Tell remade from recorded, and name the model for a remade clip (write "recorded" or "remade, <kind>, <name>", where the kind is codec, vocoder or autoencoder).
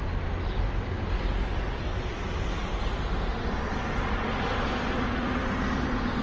recorded